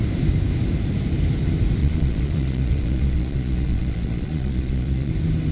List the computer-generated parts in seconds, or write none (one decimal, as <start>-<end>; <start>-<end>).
1.8-5.1